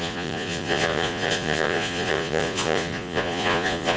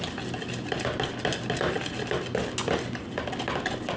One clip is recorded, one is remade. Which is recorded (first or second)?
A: second